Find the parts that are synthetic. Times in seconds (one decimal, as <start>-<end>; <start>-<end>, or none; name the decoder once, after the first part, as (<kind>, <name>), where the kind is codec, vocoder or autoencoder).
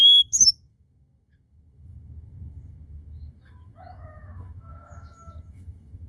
0.0-6.1 (autoencoder, DAC-VAE)